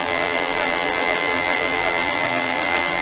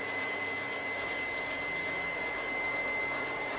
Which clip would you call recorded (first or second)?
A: second